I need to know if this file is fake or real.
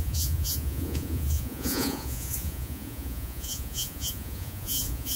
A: fake